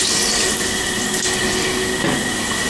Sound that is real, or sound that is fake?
real